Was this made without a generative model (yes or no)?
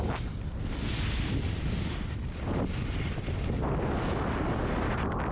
yes